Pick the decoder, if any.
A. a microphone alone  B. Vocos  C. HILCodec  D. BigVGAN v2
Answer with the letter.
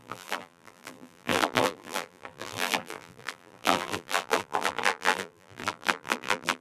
D